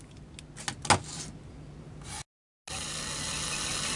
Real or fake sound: real